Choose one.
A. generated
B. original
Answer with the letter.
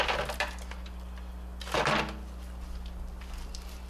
B